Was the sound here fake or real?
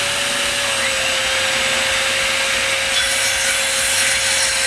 real